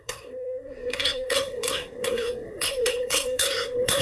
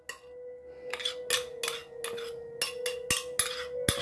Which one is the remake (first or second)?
first